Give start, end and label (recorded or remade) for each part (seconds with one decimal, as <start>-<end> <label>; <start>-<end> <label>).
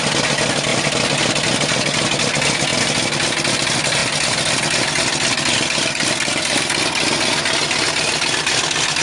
0.0-9.0 recorded